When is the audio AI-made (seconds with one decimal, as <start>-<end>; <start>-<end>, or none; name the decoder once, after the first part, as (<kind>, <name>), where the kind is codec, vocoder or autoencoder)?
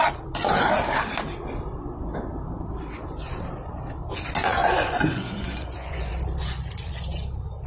4.5-6.1 (vocoder, Vocos)